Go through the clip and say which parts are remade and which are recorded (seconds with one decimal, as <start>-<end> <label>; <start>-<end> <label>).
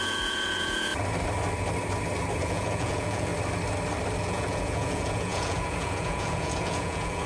0.0-0.9 remade; 0.9-2.4 recorded; 2.4-3.3 remade; 3.3-4.2 recorded; 4.2-7.3 remade